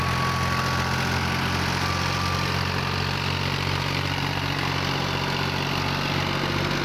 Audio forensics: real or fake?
real